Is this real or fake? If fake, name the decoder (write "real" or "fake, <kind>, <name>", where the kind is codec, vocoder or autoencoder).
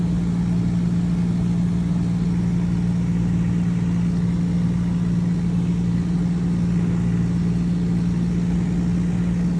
real